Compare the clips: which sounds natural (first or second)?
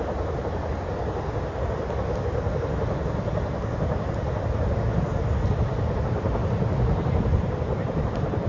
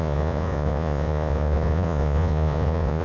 first